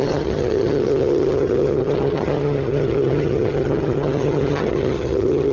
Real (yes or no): no